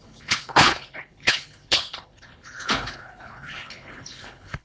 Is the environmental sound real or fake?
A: fake